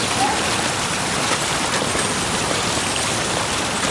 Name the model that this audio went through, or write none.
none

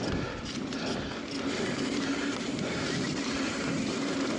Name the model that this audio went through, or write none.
none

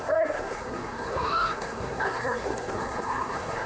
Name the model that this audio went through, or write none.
codec, SNAC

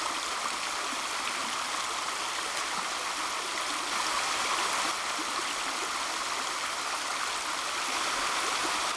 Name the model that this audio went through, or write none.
none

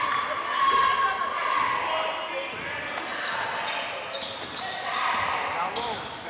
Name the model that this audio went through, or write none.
none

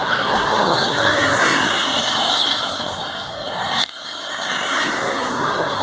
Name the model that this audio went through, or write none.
codec, SNAC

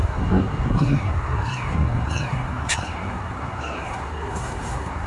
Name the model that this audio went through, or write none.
codec, SNAC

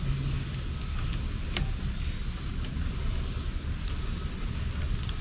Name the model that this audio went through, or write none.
none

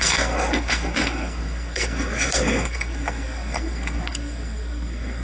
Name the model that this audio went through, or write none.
codec, SNAC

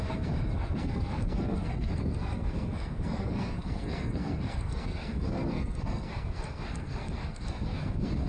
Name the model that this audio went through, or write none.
codec, SNAC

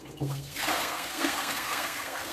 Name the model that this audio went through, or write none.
codec, SNAC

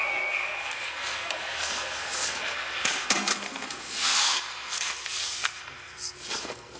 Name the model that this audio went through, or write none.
codec, SNAC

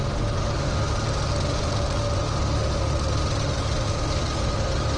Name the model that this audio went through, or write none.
none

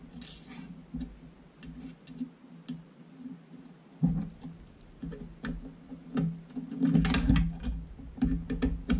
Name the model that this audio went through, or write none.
none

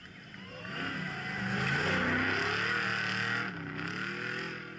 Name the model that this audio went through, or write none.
none